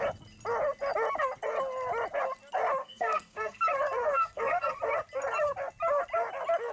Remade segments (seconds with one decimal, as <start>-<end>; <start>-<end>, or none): 2.8-3.6; 4.0-4.8